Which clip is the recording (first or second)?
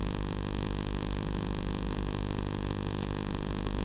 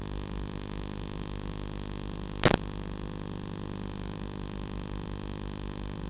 second